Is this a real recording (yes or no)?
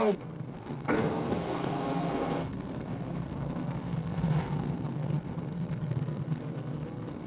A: no